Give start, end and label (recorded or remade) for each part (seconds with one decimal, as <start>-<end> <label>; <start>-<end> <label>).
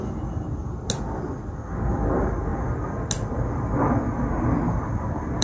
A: 0.0-5.4 recorded